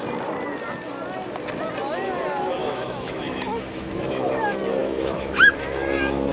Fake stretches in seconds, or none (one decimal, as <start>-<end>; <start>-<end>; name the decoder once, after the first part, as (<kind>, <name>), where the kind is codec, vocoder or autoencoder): 2.6-4.3 (autoencoder, DAC-VAE); 4.8-6.3